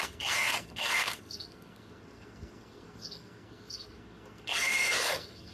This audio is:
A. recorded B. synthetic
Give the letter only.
B